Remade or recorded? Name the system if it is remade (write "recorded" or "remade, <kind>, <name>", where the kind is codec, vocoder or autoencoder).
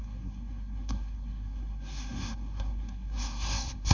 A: remade, codec, SNAC